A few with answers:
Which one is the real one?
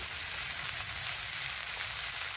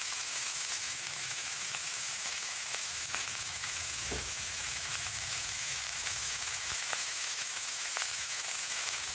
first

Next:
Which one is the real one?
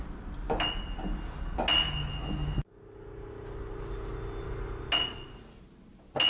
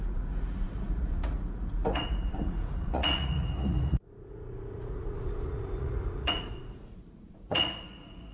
first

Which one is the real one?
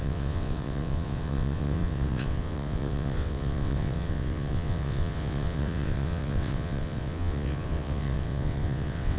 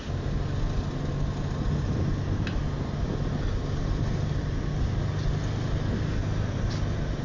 second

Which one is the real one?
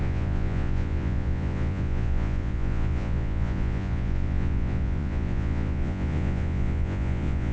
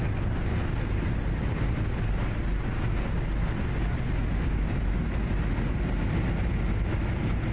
second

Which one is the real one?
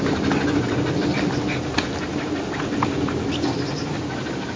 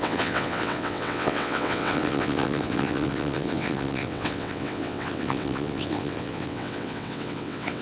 first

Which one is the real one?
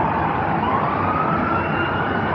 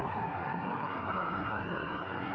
first